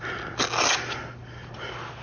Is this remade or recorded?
recorded